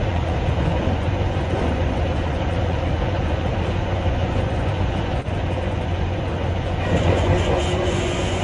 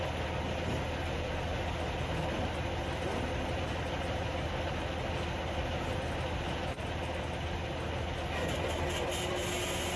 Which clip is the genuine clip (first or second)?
second